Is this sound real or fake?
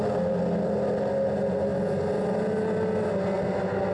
real